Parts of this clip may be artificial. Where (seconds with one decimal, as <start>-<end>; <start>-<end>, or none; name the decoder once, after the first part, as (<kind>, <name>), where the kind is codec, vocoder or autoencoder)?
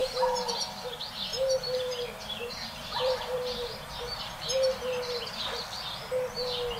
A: 1.3-5.4 (vocoder, BigVGAN v2)